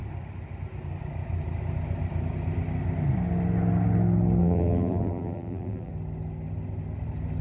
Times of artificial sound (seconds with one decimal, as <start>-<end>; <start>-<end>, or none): 4.4-5.9